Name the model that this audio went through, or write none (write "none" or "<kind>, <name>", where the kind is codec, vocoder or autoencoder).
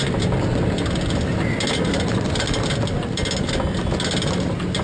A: none